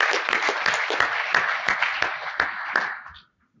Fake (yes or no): no